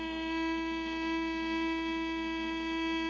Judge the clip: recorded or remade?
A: recorded